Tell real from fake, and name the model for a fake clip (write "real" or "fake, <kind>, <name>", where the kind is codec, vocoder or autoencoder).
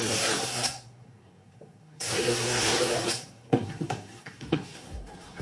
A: fake, codec, SNAC